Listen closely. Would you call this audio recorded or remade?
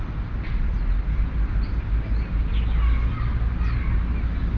recorded